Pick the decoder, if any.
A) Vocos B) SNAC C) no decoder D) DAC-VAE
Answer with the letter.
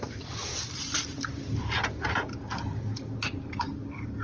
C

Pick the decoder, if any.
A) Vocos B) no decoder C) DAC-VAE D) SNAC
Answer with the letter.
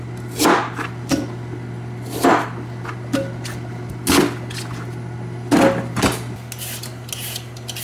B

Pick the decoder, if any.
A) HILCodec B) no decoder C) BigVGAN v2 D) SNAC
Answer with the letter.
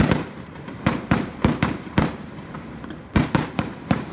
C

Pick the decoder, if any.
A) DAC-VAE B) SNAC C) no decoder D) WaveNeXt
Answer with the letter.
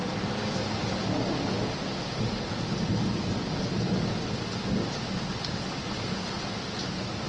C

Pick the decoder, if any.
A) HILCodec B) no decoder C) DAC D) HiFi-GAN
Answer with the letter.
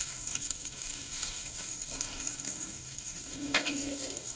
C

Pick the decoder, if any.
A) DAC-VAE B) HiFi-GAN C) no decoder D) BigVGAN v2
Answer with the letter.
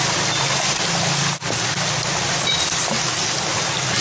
C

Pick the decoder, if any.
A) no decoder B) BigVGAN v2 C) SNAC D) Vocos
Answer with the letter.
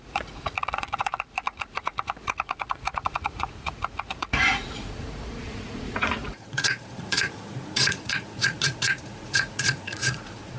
D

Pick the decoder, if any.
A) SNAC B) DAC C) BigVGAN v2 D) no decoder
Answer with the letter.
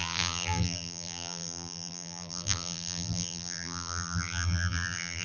C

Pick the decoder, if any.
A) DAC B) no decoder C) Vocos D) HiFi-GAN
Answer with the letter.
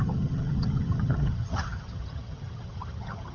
D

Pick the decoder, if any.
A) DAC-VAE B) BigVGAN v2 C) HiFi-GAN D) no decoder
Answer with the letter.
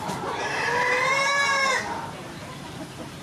B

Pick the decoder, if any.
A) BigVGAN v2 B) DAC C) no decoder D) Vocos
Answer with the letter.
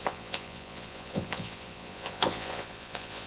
D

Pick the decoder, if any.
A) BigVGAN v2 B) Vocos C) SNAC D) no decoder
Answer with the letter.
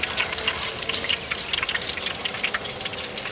D